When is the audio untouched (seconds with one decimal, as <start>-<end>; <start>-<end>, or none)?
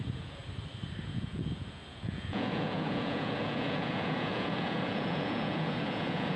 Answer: 0.4-1.0